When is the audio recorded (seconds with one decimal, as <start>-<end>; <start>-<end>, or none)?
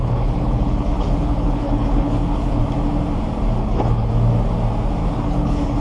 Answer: 2.6-3.6; 4.1-5.0